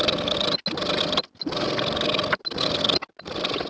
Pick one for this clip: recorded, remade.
recorded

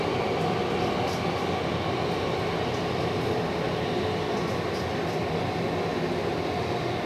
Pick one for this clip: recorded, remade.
recorded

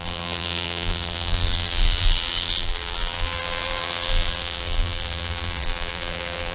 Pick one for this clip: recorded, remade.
remade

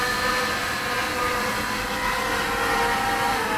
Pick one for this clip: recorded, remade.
recorded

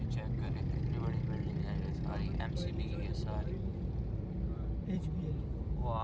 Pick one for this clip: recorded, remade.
remade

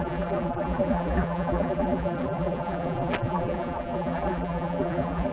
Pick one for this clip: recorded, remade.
remade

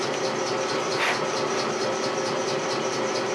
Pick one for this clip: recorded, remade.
recorded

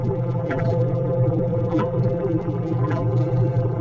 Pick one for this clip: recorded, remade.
remade